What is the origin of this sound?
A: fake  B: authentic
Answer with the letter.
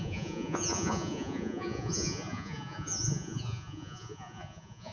A